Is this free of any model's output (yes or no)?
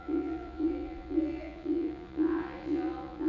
no